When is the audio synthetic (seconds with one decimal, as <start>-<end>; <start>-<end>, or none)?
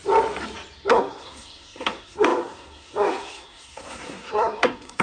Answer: 0.9-5.0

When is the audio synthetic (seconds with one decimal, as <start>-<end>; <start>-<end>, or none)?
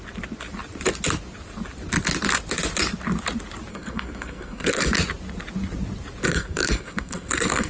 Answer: 3.7-4.9; 6.2-7.7